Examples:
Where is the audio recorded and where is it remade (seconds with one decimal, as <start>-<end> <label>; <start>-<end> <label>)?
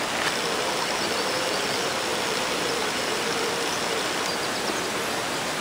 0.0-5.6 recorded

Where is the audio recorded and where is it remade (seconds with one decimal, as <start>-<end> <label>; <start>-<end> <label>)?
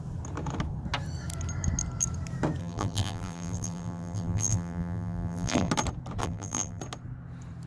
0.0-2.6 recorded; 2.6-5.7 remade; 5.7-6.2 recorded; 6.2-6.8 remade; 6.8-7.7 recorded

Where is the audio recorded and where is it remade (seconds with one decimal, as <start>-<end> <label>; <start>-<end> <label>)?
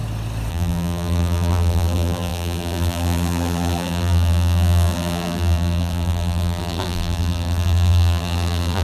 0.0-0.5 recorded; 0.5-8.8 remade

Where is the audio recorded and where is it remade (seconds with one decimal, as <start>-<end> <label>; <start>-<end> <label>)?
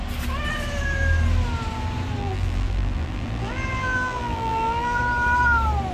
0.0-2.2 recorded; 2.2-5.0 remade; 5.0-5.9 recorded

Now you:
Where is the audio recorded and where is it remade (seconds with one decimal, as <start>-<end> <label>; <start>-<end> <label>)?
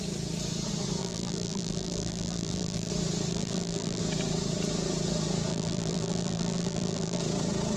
0.0-1.0 recorded; 1.0-2.9 remade; 2.9-3.3 recorded; 3.3-4.0 remade; 4.0-5.5 recorded; 5.5-7.2 remade; 7.2-7.8 recorded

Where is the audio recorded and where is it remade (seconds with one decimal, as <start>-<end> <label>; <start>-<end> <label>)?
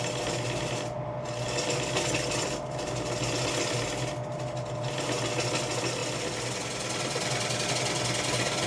0.0-8.7 recorded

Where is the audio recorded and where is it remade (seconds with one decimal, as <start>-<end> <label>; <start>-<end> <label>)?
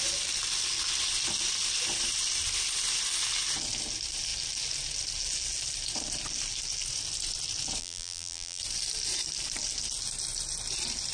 0.0-7.8 recorded; 7.8-8.6 remade; 8.6-11.1 recorded